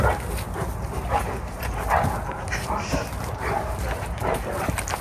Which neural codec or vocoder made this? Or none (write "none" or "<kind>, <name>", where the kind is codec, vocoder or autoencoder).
none